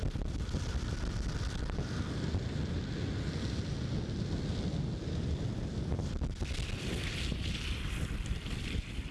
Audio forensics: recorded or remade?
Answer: recorded